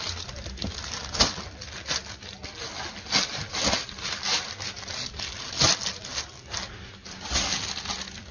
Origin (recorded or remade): recorded